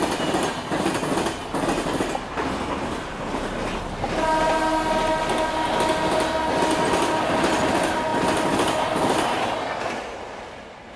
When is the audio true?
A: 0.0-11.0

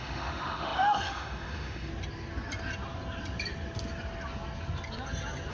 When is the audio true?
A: 1.9-5.5